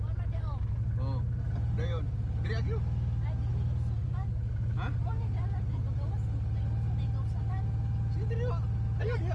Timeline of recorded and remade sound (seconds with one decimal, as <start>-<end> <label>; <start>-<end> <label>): 0.0-9.3 recorded